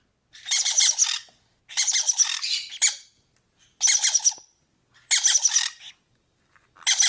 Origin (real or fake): real